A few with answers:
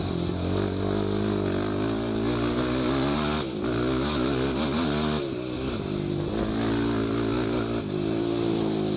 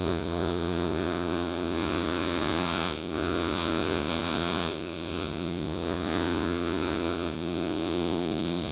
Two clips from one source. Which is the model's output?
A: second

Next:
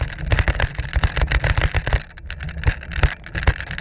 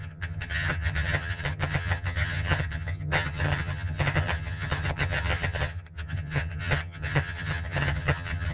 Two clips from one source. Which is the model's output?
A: second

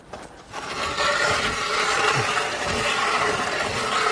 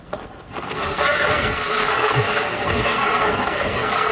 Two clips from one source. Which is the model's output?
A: second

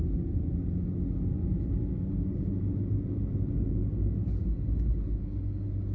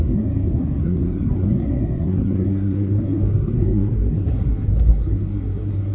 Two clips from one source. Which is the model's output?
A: second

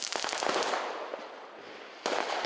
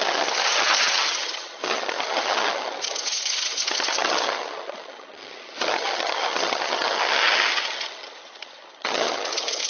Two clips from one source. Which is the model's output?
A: second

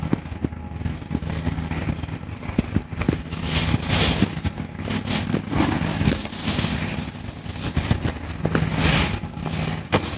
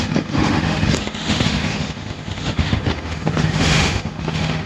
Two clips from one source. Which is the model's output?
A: second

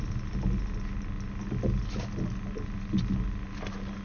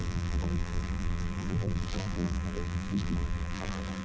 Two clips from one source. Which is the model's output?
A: second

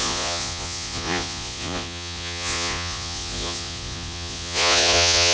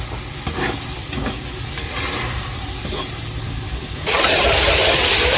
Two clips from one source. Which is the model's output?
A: first